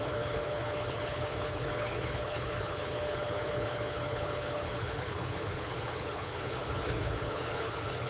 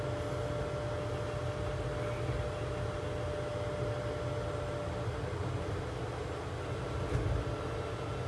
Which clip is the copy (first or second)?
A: first